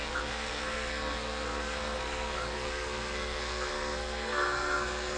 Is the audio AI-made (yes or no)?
yes